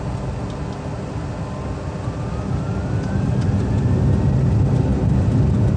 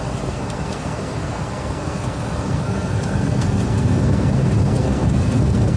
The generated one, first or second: second